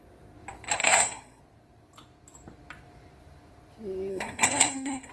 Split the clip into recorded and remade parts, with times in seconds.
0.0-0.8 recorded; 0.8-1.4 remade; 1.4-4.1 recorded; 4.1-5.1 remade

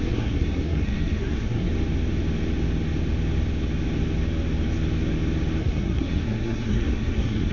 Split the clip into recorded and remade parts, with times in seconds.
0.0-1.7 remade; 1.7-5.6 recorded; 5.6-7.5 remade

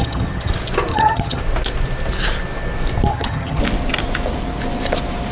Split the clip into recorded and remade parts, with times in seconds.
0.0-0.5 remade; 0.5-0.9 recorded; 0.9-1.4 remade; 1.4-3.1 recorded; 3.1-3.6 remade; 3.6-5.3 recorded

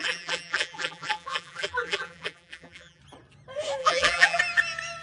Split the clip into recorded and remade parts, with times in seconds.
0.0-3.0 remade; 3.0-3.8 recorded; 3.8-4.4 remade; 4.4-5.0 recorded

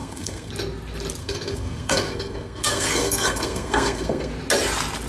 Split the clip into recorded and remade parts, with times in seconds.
0.0-0.5 remade; 0.5-1.2 recorded; 1.2-4.3 remade; 4.3-5.1 recorded

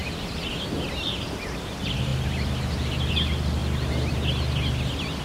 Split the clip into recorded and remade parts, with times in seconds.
0.0-5.2 recorded

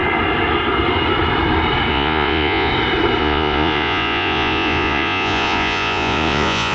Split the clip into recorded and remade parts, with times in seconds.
0.0-1.9 recorded; 1.9-2.7 remade; 2.7-3.2 recorded; 3.2-6.7 remade